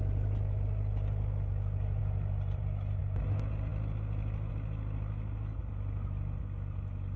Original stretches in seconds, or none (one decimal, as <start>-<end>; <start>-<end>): 0.0-2.0; 3.0-7.2